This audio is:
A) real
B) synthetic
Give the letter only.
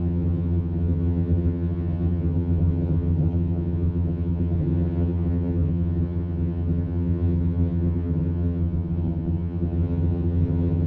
B